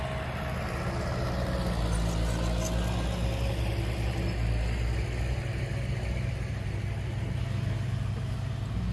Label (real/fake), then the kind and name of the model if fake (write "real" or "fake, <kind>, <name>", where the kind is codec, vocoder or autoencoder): real